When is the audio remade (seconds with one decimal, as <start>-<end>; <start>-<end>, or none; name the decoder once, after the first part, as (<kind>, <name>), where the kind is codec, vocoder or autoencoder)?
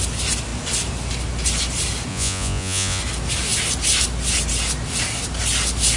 2.1-3.0 (vocoder, Vocos)